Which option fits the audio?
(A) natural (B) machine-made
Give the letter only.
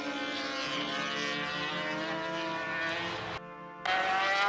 A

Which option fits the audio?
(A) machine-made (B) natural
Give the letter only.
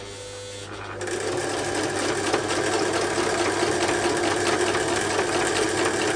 B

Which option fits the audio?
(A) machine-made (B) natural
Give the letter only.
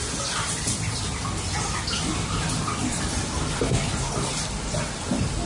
A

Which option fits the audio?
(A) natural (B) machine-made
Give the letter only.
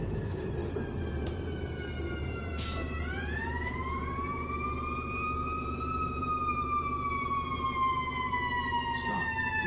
B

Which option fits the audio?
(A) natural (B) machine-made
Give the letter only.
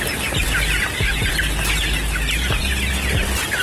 A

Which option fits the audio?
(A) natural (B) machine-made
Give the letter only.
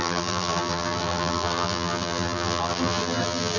B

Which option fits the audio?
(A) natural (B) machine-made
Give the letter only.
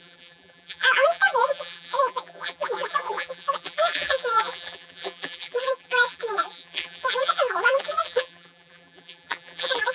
B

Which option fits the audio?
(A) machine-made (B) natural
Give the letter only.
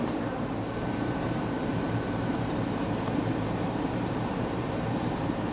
A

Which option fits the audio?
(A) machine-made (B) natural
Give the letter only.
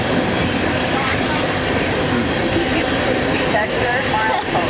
A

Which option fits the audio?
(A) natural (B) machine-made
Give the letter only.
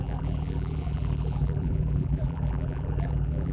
B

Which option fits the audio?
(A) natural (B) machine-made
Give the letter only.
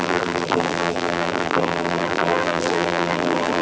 B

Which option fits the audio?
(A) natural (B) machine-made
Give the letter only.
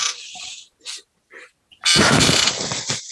A